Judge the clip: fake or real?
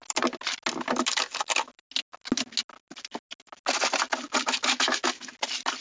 real